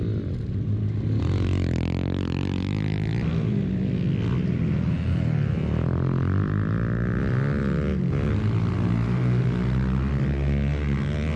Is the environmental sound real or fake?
real